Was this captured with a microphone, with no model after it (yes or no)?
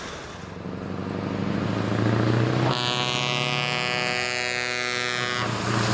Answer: yes